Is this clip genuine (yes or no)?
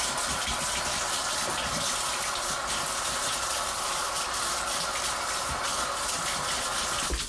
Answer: yes